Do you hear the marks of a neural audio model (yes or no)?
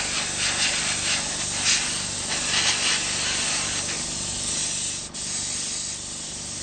no